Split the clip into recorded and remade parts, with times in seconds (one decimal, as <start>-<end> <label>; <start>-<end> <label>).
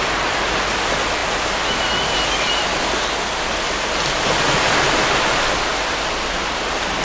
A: 0.0-7.0 recorded